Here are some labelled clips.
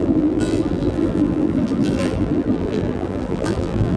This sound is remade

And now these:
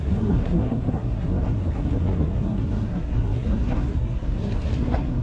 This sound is remade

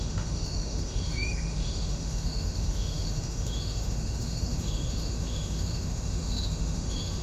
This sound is remade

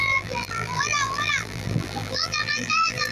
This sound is remade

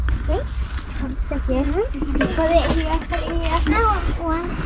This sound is recorded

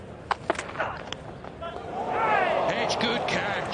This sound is recorded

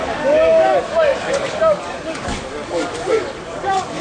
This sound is remade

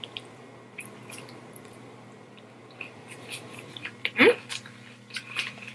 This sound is remade